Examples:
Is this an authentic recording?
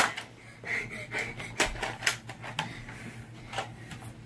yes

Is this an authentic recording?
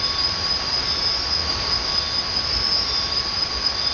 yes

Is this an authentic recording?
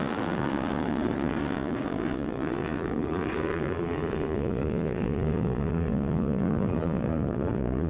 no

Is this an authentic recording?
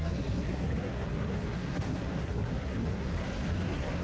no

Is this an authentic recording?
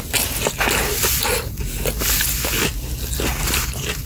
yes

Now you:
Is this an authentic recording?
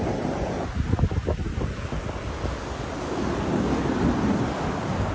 yes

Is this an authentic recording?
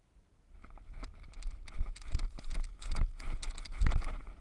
yes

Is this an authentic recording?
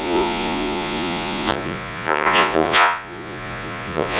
no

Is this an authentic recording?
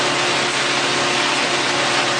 yes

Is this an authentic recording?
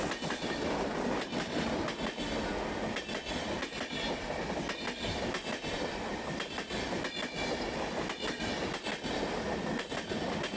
yes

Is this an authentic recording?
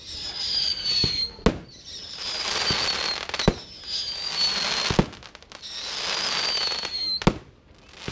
yes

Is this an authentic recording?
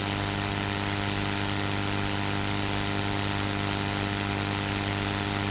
yes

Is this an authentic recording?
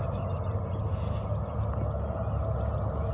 yes